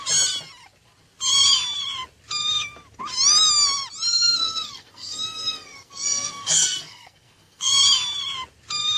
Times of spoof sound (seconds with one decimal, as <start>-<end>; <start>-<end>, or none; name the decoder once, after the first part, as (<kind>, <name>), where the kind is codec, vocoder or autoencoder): 4.1-7.7 (codec, SNAC)